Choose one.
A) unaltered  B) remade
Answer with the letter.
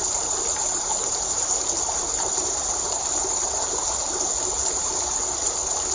B